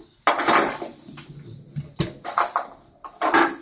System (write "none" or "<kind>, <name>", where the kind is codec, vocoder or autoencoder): none